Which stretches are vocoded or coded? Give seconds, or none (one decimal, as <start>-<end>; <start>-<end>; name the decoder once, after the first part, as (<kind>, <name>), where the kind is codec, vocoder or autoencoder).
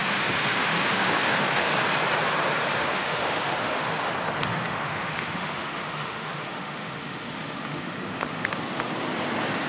0.0-1.7 (autoencoder, DAC-VAE); 2.8-4.1; 4.5-8.6